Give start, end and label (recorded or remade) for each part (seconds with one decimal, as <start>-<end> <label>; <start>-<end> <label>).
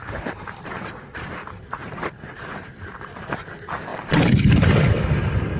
0.0-3.4 remade; 3.4-3.9 recorded; 3.9-4.7 remade; 4.7-5.6 recorded